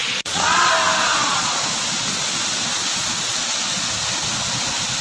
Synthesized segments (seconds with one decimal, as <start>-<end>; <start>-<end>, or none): 0.0-0.7; 1.1-3.7